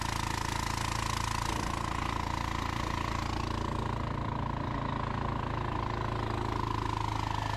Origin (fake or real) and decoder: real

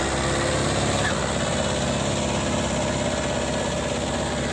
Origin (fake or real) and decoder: real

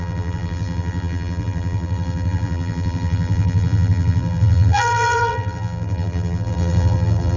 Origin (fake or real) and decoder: fake, vocoder, BigVGAN v2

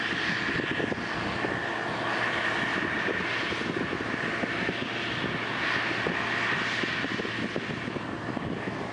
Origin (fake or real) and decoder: real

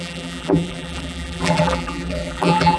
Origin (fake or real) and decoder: fake, vocoder, BigVGAN v2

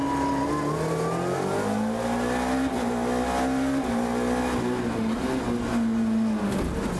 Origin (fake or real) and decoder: real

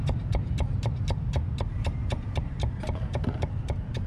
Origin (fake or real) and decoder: fake, vocoder, BigVGAN v2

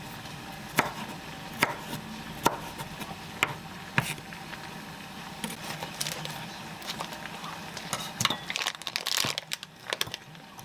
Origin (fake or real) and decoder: real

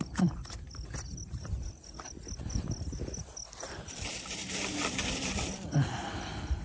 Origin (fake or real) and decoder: fake, vocoder, BigVGAN v2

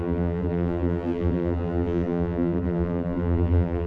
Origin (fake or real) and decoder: fake, vocoder, BigVGAN v2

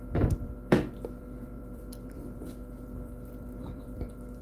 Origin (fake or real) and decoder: fake, vocoder, BigVGAN v2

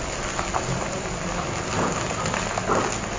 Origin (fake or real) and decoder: real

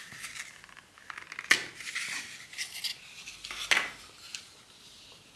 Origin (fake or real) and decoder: real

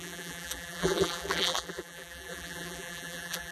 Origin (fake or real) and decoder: fake, vocoder, BigVGAN v2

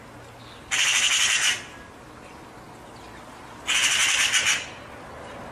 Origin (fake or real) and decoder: real